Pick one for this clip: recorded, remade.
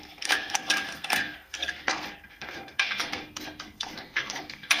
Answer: remade